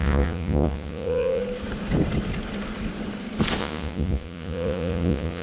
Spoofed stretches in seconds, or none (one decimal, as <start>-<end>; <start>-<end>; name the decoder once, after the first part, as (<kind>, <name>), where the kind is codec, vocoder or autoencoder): 0.0-1.4 (vocoder, Vocos); 3.6-5.4